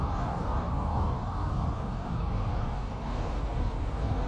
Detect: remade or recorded remade